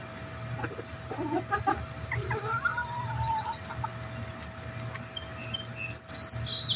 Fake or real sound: real